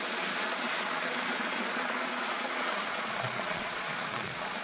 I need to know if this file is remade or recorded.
remade